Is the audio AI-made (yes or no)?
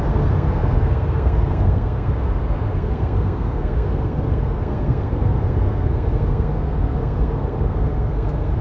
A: yes